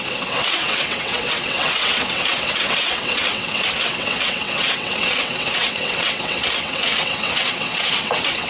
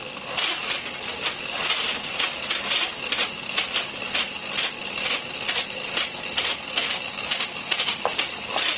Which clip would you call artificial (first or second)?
first